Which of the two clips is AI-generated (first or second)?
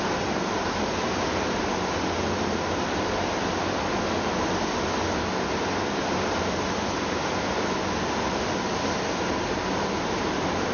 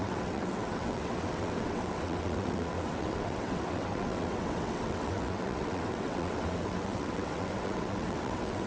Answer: second